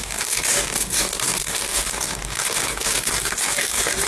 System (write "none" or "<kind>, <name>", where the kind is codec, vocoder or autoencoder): codec, DAC